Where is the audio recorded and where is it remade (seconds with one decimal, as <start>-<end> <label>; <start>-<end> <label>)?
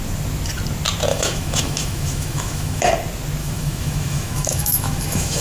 0.0-1.1 recorded; 1.1-2.9 remade; 2.9-3.4 recorded; 3.4-5.4 remade